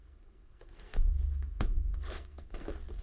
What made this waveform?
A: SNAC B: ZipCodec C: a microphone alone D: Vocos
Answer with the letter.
A